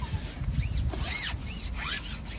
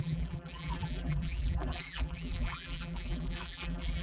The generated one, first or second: second